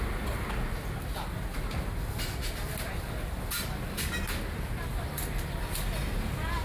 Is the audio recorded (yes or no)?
yes